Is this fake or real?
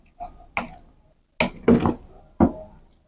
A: real